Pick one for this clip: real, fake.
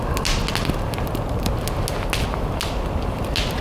real